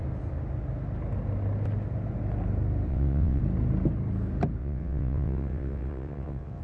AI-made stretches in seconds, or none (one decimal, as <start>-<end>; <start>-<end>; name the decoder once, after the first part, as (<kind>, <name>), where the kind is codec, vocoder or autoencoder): 2.9-3.4 (vocoder, WaveNeXt); 4.6-6.6